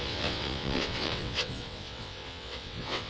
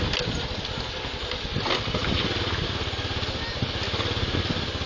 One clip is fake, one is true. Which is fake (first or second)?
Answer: first